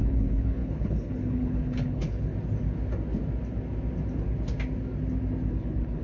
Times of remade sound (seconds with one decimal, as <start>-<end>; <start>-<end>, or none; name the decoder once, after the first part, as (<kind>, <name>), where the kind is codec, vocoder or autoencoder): 0.0-2.3 (codec, HILCodec); 5.5-6.0